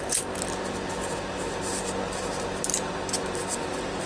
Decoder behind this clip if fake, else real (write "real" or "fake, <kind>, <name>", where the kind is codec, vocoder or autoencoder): real